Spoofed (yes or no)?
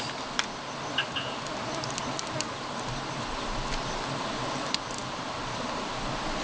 no